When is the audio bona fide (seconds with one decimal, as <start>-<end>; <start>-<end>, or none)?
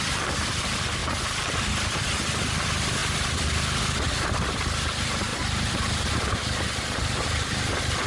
0.0-1.0; 1.6-5.3; 7.6-8.1